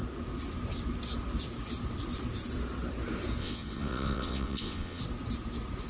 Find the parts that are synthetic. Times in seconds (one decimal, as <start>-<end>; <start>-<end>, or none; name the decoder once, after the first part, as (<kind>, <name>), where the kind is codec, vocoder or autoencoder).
3.4-5.0 (vocoder, WaveNeXt)

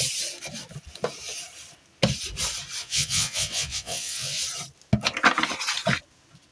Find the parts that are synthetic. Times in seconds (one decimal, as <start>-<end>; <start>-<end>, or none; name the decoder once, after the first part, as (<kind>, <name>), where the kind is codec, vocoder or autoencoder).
2.8-4.4 (vocoder, WaveNeXt)

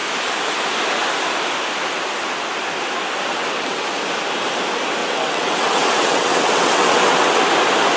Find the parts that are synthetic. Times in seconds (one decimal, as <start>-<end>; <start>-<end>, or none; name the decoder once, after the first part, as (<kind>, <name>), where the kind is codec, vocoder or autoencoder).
3.3-3.9 (vocoder, WaveNeXt); 5.0-7.4

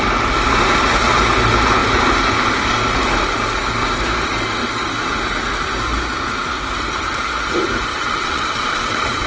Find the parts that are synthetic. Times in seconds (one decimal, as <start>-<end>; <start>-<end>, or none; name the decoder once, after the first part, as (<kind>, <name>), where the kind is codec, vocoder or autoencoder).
7.9-9.3 (vocoder, WaveNeXt)

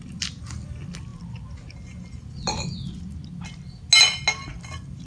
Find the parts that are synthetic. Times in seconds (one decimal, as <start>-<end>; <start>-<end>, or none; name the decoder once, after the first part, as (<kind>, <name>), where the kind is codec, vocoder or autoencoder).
none

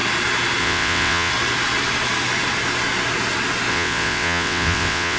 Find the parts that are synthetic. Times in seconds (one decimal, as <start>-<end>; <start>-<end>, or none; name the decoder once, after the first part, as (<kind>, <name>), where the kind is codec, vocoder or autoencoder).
0.6-1.3 (vocoder, WaveNeXt); 3.7-5.2

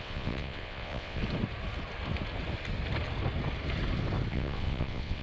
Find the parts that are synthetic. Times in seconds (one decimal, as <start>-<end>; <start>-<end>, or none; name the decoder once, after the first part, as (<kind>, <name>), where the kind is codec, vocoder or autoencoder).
0.0-1.2 (vocoder, WaveNeXt); 4.3-5.2